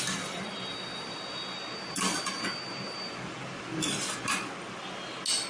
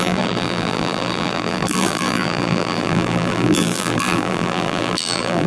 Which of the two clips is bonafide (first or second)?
first